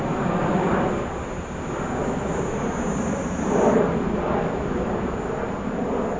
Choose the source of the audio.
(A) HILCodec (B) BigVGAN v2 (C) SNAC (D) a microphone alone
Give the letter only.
D